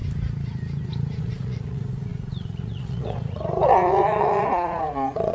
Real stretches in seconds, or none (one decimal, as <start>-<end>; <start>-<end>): 0.0-1.2